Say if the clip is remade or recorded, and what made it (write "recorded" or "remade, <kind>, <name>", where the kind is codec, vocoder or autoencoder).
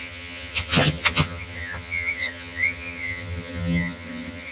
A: remade, vocoder, HiFi-GAN